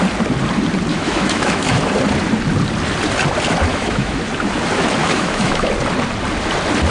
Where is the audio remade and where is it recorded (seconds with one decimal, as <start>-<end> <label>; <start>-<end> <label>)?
0.0-0.9 recorded; 0.9-1.8 remade; 1.8-3.7 recorded; 3.7-4.2 remade; 4.2-5.0 recorded; 5.0-5.7 remade; 5.7-6.9 recorded